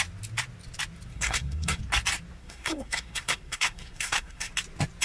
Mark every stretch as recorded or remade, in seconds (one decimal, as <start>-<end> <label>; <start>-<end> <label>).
0.0-1.1 recorded; 1.1-1.8 remade; 1.8-2.4 recorded; 2.4-4.5 remade; 4.5-5.0 recorded